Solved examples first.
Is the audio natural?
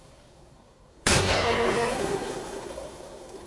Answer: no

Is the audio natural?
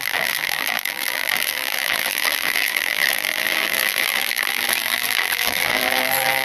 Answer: no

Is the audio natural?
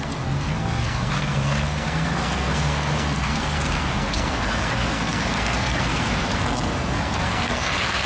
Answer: no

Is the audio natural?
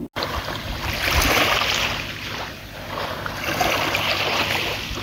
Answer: yes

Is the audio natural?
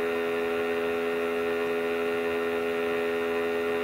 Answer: yes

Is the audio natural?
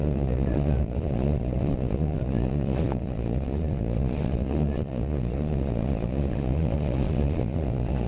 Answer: no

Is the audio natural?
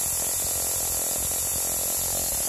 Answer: yes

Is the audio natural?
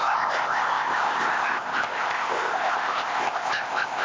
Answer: no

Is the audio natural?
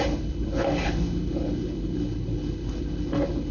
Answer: no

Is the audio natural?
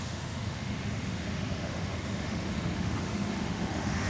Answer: no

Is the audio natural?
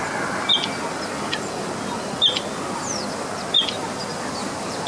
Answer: yes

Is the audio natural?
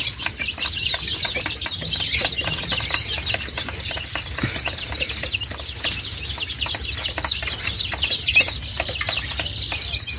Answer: yes